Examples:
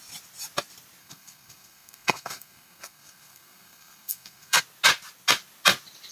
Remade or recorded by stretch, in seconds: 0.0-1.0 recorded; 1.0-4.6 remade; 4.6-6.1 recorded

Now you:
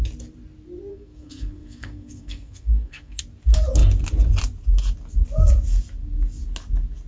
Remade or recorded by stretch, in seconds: 0.0-0.9 recorded; 0.9-3.2 remade; 3.2-7.1 recorded

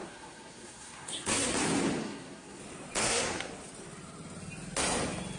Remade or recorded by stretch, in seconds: 0.0-1.5 remade; 1.5-2.0 recorded; 2.0-2.6 remade; 2.6-3.0 recorded; 3.0-3.5 remade; 3.5-5.4 recorded

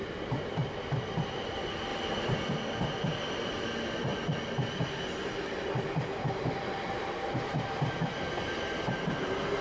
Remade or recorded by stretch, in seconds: 0.0-9.6 recorded